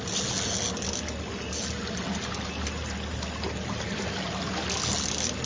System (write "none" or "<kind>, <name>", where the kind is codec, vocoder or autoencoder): none